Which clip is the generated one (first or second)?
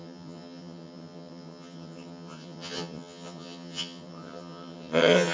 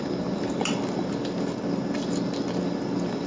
first